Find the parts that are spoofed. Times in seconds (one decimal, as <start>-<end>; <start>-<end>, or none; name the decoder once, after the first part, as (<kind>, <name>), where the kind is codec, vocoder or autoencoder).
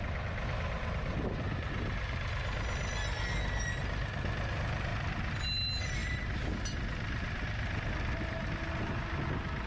none